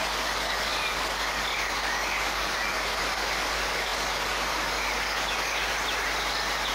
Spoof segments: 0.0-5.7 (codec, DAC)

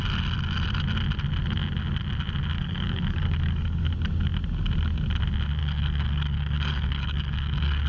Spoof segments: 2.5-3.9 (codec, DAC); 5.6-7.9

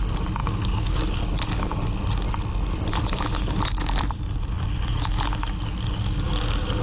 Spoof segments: 0.4-1.0 (codec, DAC)

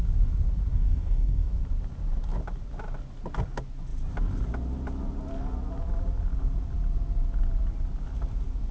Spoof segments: 0.7-1.5 (codec, DAC)